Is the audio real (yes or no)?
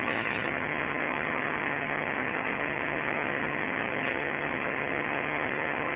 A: no